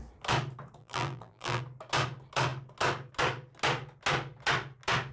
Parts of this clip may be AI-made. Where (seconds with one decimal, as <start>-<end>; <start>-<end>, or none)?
0.8-1.6